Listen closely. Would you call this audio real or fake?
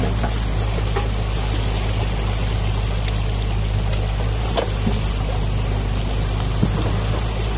real